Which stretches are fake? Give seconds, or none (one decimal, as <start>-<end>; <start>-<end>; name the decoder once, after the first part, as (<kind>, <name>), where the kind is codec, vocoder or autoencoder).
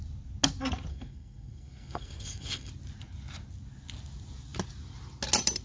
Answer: 0.9-2.7 (codec, SNAC)